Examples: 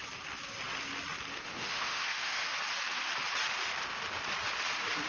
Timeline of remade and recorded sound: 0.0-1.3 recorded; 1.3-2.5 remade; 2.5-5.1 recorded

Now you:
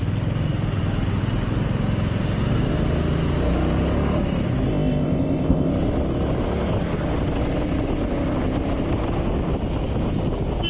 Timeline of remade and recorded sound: 0.0-4.7 recorded; 4.7-5.7 remade; 5.7-10.7 recorded

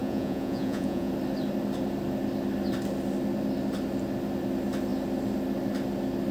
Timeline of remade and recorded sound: 0.0-1.1 remade; 1.1-6.3 recorded

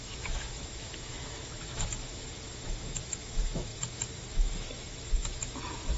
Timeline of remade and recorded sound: 0.0-6.0 remade

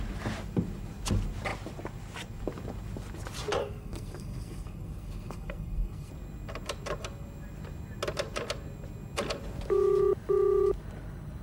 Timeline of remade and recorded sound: 0.0-3.6 recorded; 3.6-6.1 remade; 6.1-11.4 recorded